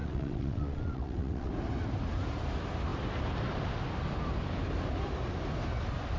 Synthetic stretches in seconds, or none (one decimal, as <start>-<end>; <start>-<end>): 0.0-1.5